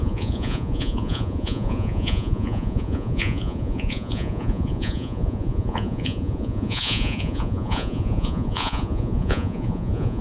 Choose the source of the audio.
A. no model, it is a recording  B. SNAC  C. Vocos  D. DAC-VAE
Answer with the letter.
C